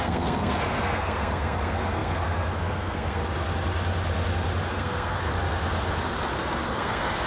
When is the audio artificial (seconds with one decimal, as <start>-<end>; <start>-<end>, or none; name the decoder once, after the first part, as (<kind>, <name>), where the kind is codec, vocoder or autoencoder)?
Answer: 0.0-3.2 (codec, SNAC); 4.7-5.3; 6.3-7.3